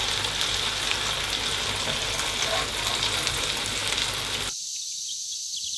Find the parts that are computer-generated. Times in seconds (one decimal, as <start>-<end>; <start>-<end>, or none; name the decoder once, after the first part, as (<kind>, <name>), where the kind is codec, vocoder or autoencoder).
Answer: 3.3-5.8 (vocoder, BigVGAN v2)